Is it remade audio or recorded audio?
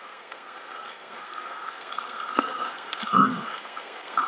remade